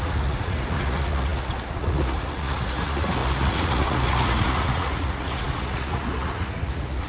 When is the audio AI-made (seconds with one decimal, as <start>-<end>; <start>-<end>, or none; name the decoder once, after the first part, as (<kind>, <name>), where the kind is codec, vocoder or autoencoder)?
0.0-7.1 (vocoder, Vocos)

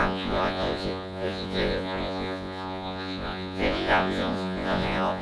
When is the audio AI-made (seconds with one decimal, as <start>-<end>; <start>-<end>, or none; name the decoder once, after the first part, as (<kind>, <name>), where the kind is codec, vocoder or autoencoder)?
0.0-5.2 (vocoder, Vocos)